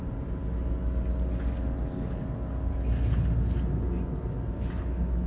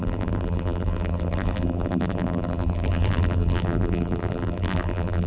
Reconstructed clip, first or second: second